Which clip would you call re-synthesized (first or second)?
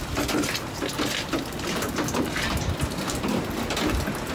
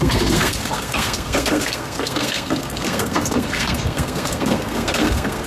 second